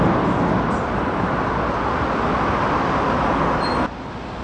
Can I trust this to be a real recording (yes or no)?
yes